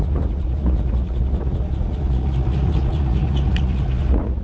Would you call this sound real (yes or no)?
no